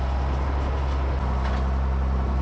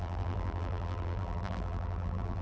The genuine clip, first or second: first